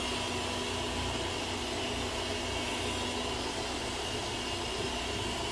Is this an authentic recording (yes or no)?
yes